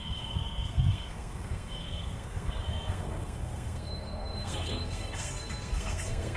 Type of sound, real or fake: fake